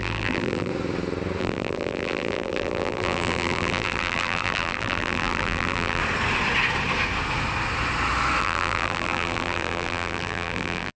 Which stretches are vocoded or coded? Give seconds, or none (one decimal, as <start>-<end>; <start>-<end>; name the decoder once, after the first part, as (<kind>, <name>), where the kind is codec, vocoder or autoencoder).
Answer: 0.0-0.7 (vocoder, BigVGAN v2); 1.4-6.0; 8.4-11.0